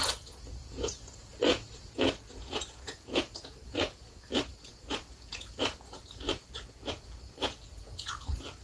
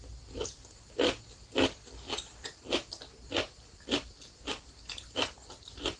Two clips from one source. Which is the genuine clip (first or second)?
second